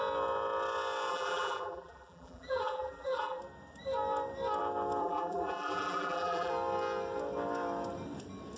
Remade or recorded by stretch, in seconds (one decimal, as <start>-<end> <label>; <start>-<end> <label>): 0.0-1.1 recorded; 1.1-3.4 remade; 3.4-5.0 recorded; 5.0-6.5 remade; 6.5-8.6 recorded